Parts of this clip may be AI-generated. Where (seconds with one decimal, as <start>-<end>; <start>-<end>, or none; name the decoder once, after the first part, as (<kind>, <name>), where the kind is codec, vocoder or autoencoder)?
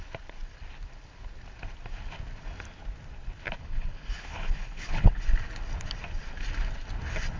3.6-5.2 (codec, HILCodec)